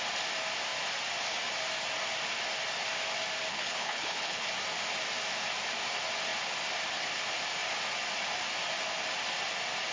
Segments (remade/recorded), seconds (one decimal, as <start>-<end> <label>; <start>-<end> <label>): 0.0-3.5 recorded; 3.5-4.5 remade; 4.5-9.9 recorded